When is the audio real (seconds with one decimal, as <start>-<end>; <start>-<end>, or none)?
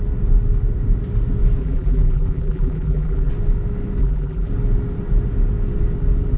0.0-1.6; 3.3-4.0; 4.5-6.4